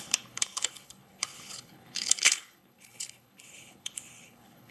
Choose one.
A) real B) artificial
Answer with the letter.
B